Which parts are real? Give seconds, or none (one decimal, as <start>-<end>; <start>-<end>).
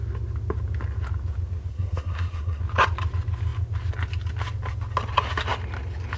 0.0-1.7; 2.6-6.2